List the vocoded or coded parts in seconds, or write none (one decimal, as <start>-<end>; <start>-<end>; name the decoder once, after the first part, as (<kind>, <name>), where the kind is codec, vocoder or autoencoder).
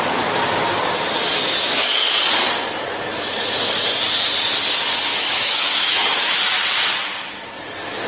5.1-6.3 (autoencoder, DAC-VAE)